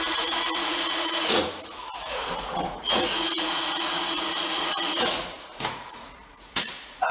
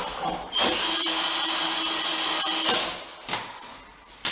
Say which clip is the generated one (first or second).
first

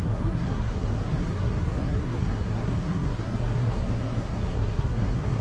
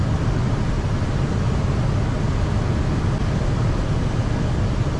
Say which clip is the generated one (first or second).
first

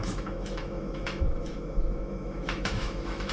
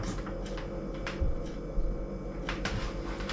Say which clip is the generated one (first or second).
first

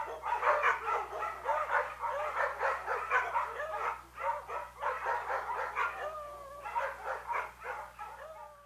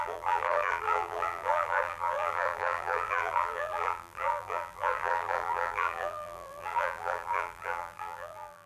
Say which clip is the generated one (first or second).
second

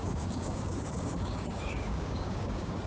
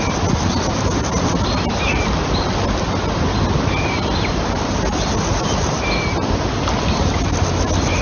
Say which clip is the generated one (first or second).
first